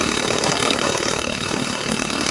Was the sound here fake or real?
fake